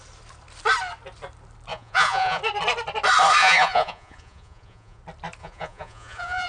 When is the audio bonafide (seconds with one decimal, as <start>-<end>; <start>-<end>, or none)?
0.0-1.7; 2.4-3.4; 5.0-5.4

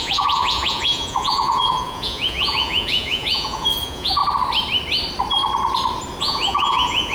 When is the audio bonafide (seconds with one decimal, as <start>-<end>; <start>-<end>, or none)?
4.2-6.2

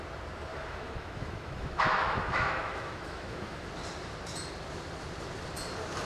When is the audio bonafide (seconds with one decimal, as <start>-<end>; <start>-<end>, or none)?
0.0-0.5; 3.7-6.1

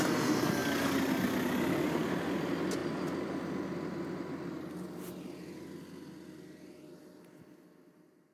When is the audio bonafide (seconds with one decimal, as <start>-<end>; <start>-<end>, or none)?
0.0-8.3